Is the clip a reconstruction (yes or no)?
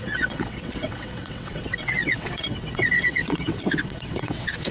yes